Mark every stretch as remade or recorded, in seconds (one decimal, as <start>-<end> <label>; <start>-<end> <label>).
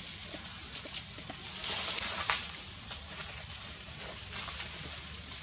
0.0-5.4 recorded